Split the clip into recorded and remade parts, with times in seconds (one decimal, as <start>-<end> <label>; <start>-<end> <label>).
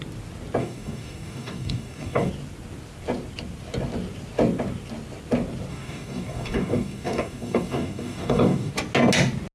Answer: 0.0-0.6 recorded; 0.6-2.3 remade; 2.3-5.7 recorded; 5.7-8.7 remade; 8.7-9.5 recorded